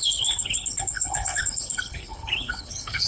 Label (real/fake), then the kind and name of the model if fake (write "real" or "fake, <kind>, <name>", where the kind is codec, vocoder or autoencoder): fake, codec, HILCodec